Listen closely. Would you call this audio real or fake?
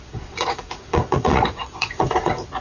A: fake